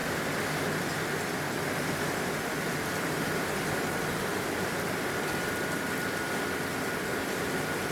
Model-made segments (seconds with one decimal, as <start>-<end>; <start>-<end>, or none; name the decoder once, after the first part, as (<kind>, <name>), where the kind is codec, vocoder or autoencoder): none